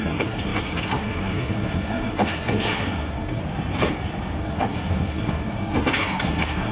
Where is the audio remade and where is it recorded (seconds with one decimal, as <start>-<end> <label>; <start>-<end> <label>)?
0.0-3.4 remade; 3.4-4.4 recorded; 4.4-6.7 remade